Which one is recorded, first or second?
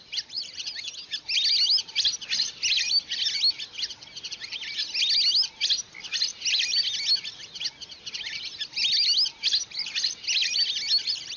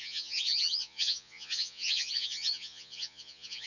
first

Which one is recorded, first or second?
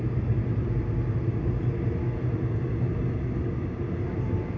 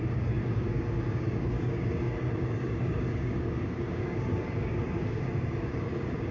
first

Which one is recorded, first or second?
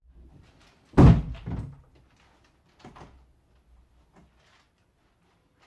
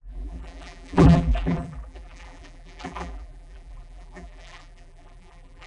first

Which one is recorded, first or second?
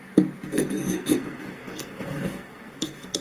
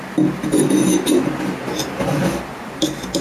second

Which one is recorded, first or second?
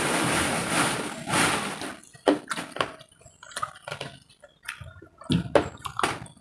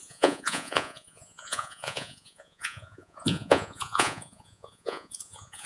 first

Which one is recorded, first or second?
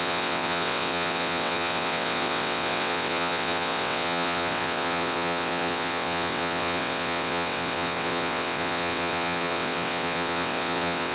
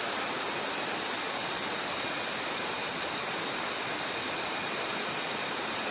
second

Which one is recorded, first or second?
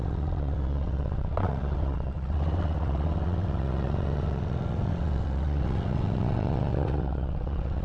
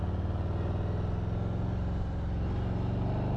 second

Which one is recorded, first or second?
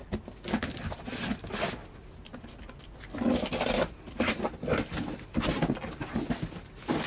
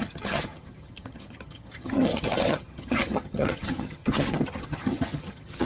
first